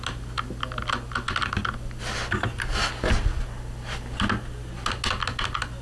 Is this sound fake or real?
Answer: real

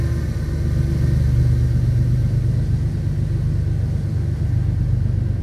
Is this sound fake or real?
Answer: real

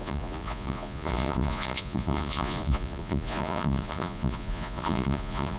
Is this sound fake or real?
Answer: fake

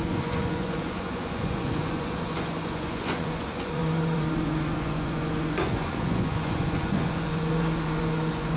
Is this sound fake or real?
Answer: fake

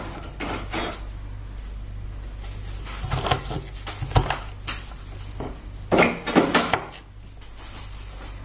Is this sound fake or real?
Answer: real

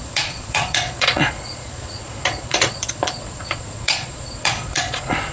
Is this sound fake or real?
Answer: fake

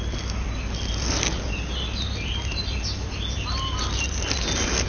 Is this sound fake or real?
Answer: real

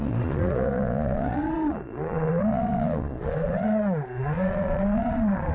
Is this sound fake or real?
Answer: fake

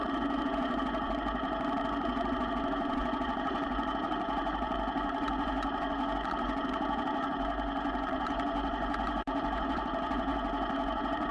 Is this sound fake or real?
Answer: fake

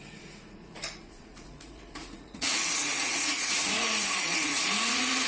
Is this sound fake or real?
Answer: fake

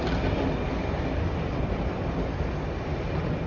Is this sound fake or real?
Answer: real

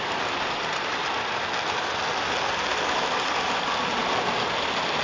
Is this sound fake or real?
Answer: real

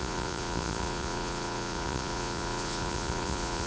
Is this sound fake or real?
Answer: fake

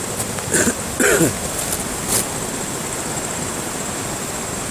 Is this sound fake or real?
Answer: real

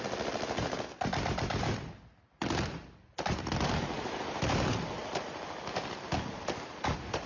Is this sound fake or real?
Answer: real